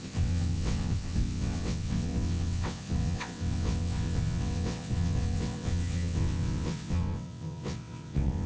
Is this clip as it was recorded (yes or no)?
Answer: no